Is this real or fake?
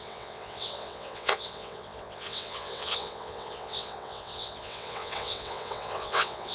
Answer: fake